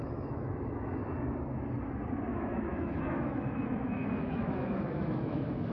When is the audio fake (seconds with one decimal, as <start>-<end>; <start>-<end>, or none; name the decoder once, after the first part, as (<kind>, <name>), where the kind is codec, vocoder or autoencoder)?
0.0-1.0 (autoencoder, DAC-VAE); 2.3-5.7